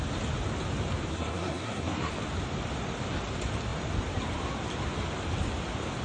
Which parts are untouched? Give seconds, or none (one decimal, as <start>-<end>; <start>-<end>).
0.0-1.1; 2.1-6.0